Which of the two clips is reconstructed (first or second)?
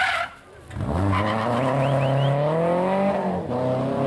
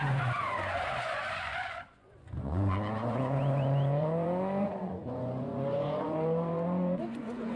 second